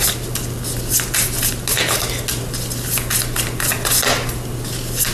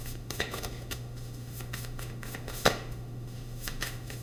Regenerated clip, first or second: second